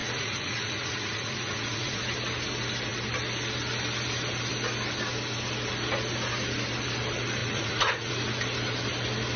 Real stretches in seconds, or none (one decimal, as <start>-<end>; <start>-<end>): 2.0-7.4; 8.1-9.4